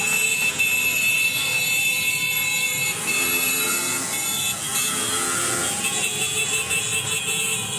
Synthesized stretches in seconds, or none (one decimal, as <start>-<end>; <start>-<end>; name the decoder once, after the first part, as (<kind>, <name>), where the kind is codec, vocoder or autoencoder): 0.0-7.8 (vocoder, Vocos)